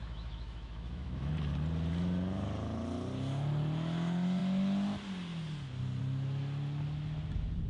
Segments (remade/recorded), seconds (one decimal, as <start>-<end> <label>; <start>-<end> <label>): 0.0-1.3 remade; 1.3-7.7 recorded